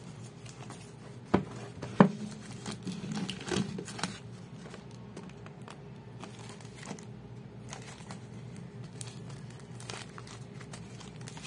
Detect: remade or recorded recorded